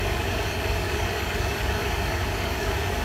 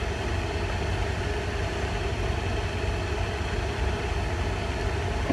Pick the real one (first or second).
second